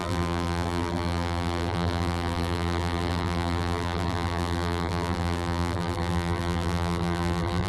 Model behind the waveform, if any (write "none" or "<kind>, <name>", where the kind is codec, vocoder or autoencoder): vocoder, BigVGAN v2